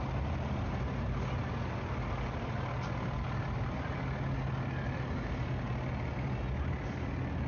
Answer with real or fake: real